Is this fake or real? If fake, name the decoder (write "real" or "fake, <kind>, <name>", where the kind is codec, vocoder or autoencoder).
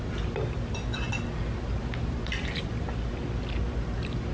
real